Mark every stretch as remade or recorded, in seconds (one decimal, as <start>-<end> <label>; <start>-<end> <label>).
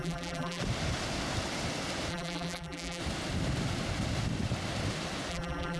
0.0-0.6 remade; 0.6-2.1 recorded; 2.1-3.0 remade; 3.0-5.3 recorded; 5.3-5.8 remade